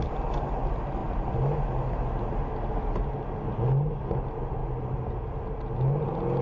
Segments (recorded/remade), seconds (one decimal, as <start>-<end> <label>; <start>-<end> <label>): 0.0-6.4 recorded